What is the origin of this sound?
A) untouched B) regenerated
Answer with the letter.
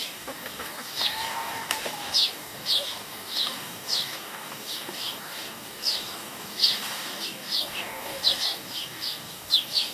B